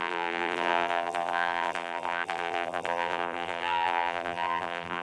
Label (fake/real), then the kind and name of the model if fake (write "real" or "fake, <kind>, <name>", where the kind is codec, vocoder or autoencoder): fake, vocoder, BigVGAN v2